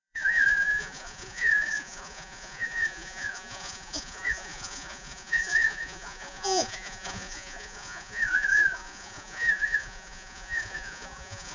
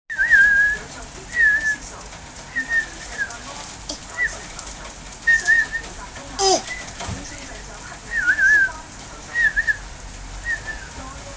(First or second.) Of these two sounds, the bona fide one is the second